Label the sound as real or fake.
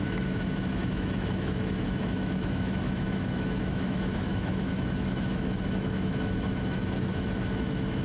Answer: fake